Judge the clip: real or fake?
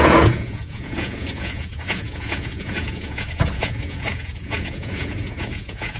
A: fake